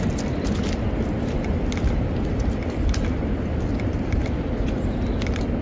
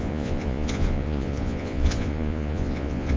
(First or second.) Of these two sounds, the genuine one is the first